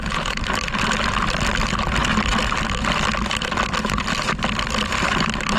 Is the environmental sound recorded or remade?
recorded